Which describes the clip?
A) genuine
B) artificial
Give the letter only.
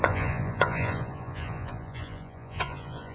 B